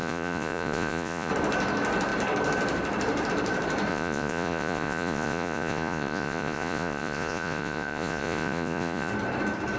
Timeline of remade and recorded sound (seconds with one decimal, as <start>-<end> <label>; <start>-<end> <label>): 0.0-1.3 remade; 1.3-3.9 recorded; 3.9-9.1 remade; 9.1-9.8 recorded